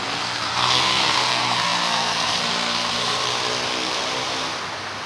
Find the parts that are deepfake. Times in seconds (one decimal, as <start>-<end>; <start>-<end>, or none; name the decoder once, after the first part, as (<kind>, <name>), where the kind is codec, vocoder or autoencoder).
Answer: 0.0-3.2 (codec, SNAC)